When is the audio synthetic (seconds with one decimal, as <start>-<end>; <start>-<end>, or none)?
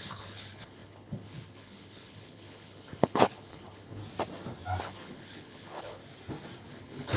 0.0-4.0; 4.8-6.0; 6.7-7.2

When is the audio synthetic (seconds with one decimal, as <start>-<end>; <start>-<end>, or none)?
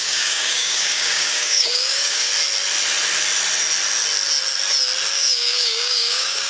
0.0-2.3; 5.1-6.5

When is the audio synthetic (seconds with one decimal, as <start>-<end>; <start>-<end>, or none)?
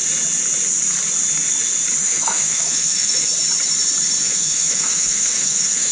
2.0-3.3; 4.2-5.9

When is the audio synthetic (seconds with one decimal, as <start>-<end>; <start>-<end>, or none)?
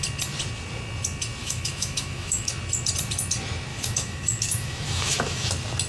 1.4-2.5; 3.7-5.5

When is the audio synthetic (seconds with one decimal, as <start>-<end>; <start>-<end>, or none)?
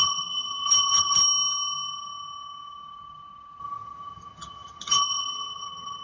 0.0-1.2; 3.6-6.0